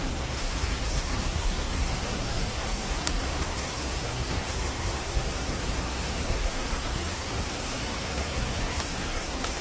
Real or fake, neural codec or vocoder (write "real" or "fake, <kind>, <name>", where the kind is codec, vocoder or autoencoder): fake, codec, SNAC